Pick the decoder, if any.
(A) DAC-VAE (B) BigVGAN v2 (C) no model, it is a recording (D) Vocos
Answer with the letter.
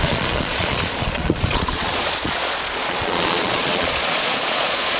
D